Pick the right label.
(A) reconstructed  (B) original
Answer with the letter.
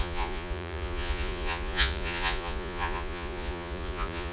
A